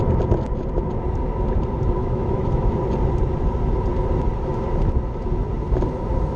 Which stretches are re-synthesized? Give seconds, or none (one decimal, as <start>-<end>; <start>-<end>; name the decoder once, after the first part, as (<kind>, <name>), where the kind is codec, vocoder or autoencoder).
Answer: 2.0-2.7 (autoencoder, DAC-VAE)